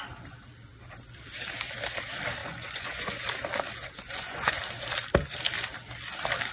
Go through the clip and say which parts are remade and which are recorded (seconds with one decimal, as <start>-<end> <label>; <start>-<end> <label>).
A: 0.0-2.4 recorded; 2.4-3.1 remade; 3.1-3.8 recorded; 3.8-4.6 remade; 4.6-6.5 recorded